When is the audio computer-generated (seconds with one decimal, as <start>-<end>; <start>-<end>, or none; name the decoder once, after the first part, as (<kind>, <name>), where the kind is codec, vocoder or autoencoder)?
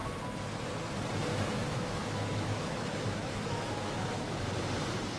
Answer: 1.3-4.4 (autoencoder, DAC-VAE)